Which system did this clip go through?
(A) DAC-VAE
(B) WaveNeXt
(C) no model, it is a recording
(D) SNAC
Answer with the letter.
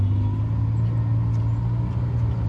C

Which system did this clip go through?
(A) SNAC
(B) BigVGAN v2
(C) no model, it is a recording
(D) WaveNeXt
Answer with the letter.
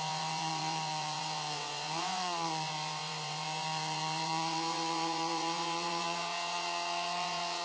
D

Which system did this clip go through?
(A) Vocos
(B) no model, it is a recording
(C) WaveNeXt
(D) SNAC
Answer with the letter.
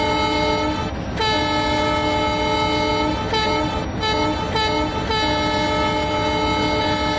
B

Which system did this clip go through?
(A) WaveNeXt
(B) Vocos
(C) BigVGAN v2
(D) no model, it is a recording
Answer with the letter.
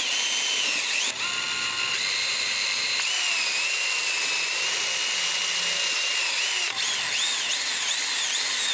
D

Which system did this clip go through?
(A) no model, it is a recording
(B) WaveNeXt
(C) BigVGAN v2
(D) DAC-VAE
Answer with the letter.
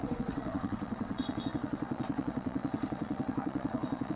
B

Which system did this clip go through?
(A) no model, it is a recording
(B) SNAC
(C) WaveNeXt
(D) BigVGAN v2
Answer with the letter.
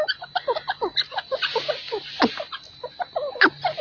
A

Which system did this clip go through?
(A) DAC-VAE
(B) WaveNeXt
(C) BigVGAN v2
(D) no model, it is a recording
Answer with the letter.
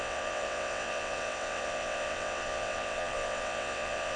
B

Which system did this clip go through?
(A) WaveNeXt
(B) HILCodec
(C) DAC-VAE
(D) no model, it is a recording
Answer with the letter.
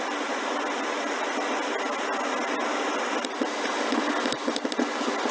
D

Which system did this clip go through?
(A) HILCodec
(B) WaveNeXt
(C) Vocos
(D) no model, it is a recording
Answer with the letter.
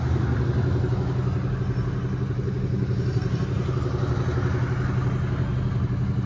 D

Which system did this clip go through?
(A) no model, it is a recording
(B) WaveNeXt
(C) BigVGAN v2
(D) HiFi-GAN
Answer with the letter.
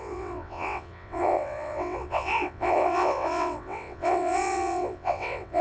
B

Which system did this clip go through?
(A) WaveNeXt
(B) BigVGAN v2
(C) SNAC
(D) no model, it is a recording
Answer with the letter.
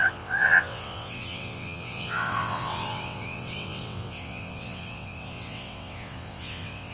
A